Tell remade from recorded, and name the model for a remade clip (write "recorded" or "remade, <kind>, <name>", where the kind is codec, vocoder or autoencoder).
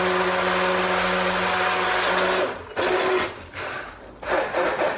recorded